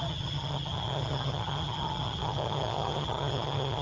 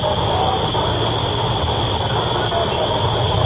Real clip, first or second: second